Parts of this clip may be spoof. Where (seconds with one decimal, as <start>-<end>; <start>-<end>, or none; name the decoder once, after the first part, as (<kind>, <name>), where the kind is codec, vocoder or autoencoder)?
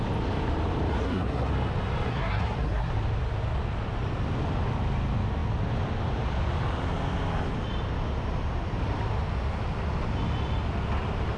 0.9-1.5 (codec, SNAC); 2.1-2.9